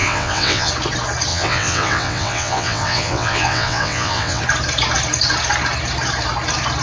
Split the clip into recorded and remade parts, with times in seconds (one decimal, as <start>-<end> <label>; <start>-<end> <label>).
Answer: 0.0-0.7 remade; 0.7-1.3 recorded; 1.3-4.4 remade; 4.4-6.8 recorded